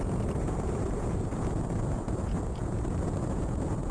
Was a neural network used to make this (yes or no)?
yes